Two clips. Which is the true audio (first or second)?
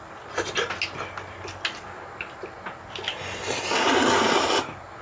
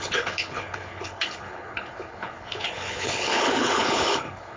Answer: first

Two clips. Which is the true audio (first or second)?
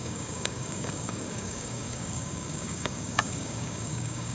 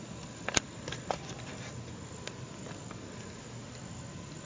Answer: second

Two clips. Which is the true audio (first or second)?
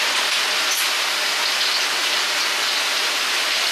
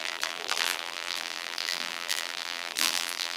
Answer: first